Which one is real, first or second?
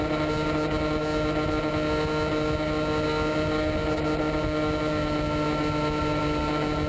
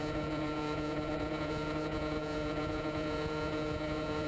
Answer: first